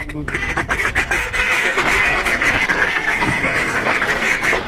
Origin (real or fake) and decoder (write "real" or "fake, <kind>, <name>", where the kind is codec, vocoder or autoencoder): fake, codec, SNAC